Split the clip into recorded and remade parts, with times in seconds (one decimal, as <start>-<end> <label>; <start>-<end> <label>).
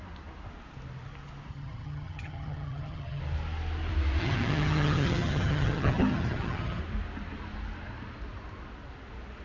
0.0-1.5 recorded; 1.5-3.2 remade; 3.2-4.2 recorded; 4.2-6.8 remade; 6.8-9.4 recorded